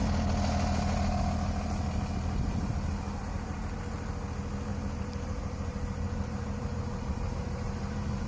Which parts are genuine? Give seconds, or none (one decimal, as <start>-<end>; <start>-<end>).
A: 0.0-3.2; 3.8-4.7